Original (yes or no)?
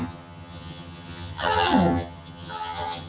no